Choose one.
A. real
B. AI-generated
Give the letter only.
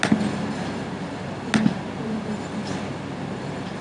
A